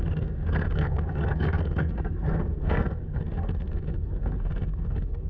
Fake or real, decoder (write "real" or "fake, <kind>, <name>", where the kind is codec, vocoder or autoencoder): fake, codec, SNAC